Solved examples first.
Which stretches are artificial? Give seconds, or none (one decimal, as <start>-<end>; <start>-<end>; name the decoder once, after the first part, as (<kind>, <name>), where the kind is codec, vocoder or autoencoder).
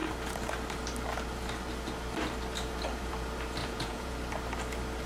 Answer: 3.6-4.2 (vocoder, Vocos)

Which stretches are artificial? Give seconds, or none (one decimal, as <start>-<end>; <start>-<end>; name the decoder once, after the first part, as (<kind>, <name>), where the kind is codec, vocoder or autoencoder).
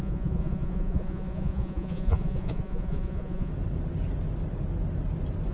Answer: 0.0-3.5 (vocoder, Vocos)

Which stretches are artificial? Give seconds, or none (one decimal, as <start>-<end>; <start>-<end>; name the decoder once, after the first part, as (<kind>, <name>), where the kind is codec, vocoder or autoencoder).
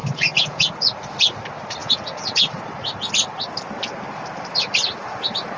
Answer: 0.0-0.7 (vocoder, Vocos); 1.8-2.6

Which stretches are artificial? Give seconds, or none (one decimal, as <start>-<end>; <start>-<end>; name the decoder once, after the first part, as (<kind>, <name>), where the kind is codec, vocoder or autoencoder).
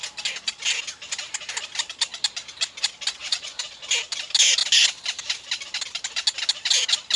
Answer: 3.2-3.7 (vocoder, Vocos)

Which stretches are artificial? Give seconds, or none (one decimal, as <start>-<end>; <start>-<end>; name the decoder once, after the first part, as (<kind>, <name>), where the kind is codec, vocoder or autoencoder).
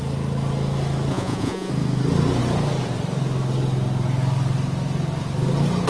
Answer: 1.1-1.7 (vocoder, Vocos)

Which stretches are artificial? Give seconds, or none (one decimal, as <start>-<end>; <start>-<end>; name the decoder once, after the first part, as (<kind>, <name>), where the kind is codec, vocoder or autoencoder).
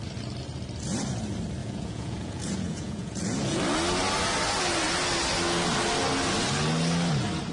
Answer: 1.6-3.6 (vocoder, Vocos)